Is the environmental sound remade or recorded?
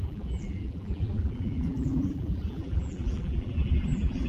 remade